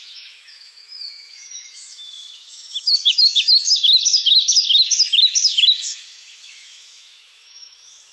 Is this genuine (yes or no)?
no